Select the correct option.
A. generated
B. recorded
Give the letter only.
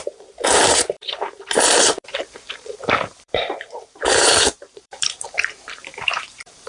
A